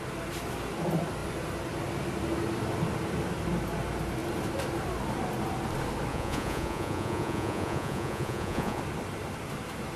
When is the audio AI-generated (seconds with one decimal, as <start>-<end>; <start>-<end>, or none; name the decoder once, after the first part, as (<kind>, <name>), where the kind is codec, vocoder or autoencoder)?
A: 6.1-8.8 (vocoder, Vocos)